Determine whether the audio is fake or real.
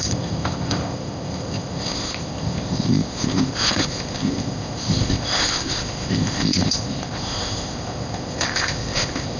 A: fake